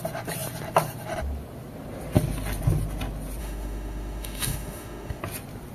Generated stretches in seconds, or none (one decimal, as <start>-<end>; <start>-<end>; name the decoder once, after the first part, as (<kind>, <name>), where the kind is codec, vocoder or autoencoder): 3.4-5.2 (autoencoder, DAC-VAE)